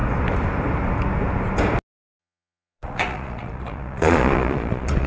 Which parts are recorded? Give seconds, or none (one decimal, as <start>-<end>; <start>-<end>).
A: 0.0-2.2